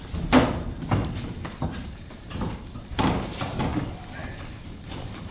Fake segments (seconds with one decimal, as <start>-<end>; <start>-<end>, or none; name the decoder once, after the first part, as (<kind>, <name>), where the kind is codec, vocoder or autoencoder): 1.0-3.6 (vocoder, BigVGAN v2); 4.2-5.3